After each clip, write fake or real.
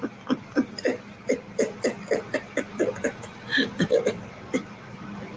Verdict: fake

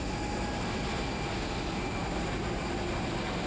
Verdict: real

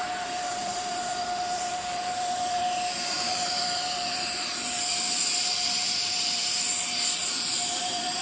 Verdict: fake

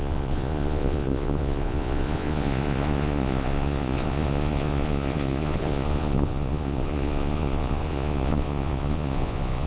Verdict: fake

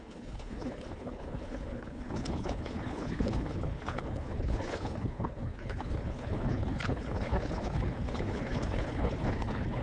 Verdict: fake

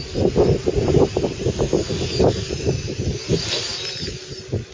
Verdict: real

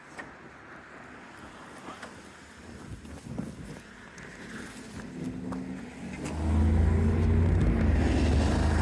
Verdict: real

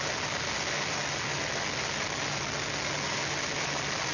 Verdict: real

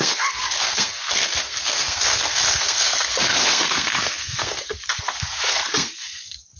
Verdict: fake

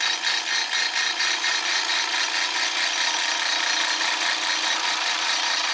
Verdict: real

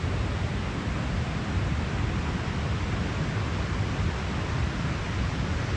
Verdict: real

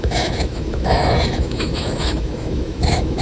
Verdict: fake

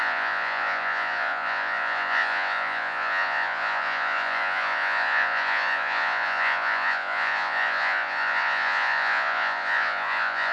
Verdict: fake